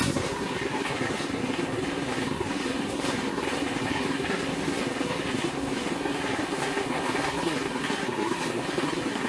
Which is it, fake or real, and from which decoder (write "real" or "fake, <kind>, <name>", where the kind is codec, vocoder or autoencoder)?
fake, codec, SNAC